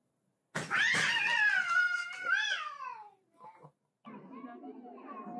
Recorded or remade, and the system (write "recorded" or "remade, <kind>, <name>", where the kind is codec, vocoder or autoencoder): recorded